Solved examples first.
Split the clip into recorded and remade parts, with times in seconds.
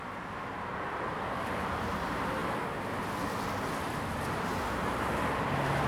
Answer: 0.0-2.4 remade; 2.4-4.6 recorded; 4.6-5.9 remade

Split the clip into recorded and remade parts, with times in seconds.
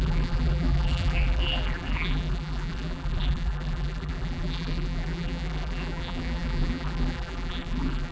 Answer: 0.0-8.1 remade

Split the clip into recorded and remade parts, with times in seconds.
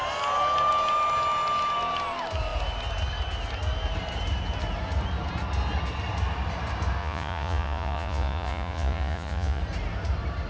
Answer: 0.0-7.0 recorded; 7.0-9.6 remade; 9.6-10.5 recorded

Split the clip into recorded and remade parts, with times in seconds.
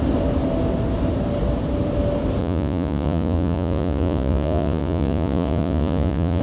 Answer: 0.0-2.4 recorded; 2.4-6.4 remade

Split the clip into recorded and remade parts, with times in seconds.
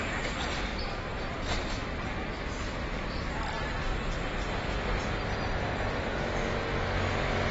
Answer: 0.0-0.7 recorded; 0.7-1.3 remade; 1.3-7.5 recorded